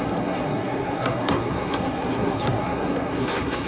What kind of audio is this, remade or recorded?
remade